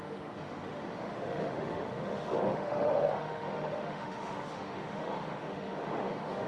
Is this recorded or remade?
remade